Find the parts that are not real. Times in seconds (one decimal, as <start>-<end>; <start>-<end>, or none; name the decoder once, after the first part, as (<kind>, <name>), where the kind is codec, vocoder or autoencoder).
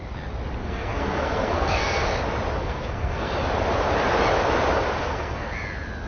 0.6-2.1 (codec, SNAC); 2.6-3.3; 5.0-5.5